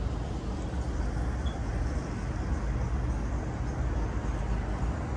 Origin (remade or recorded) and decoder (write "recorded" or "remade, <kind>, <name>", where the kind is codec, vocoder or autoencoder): recorded